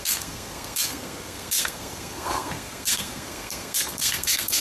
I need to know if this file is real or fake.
fake